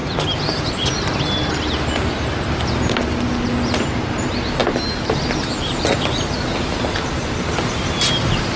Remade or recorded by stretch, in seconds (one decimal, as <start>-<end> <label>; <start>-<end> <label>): 0.0-8.6 recorded